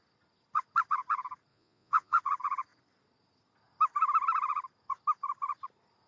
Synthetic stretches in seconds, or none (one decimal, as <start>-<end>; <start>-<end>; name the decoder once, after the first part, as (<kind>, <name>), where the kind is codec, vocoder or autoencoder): 1.5-2.2 (vocoder, Vocos)